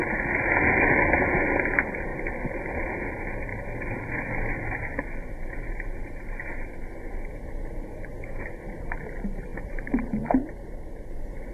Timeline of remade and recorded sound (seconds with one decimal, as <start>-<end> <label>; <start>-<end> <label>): 0.0-2.1 recorded; 2.1-2.6 remade; 2.6-9.5 recorded; 9.5-10.0 remade; 10.0-10.4 recorded; 10.4-11.1 remade; 11.1-11.5 recorded